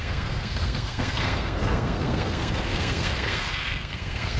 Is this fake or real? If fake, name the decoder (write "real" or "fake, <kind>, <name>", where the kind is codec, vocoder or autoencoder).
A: fake, codec, SNAC